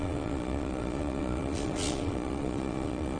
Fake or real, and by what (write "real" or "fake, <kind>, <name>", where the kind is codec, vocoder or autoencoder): fake, vocoder, Vocos